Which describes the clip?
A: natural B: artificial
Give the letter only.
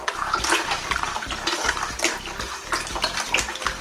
A